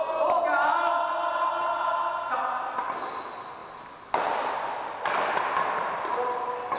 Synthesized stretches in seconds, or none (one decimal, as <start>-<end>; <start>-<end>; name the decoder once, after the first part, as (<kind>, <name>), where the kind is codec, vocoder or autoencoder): none